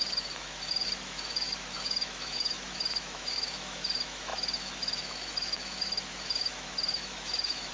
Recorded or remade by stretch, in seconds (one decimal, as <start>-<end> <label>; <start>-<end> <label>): 0.0-7.7 remade